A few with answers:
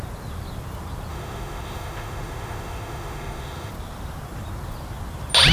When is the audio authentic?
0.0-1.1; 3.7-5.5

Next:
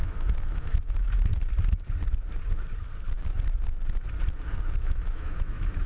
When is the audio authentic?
1.3-4.8

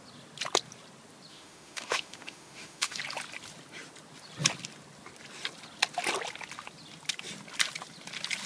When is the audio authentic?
0.0-1.3; 3.0-8.5

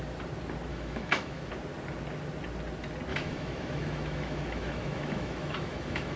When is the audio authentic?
0.0-0.7; 1.5-3.1

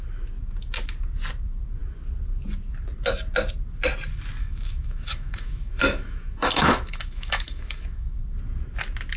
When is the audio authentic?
0.0-4.4; 8.2-9.2